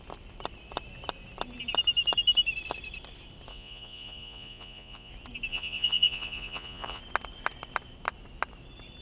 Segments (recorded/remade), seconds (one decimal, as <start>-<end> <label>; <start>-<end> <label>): 0.0-3.5 recorded; 3.5-5.1 remade; 5.1-5.5 recorded; 5.5-7.0 remade; 7.0-9.0 recorded